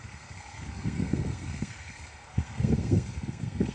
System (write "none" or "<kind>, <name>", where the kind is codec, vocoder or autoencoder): codec, SNAC